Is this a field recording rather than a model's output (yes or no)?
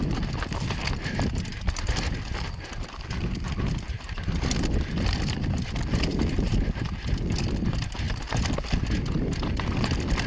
yes